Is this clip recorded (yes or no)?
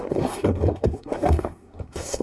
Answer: no